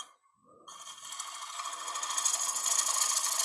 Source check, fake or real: real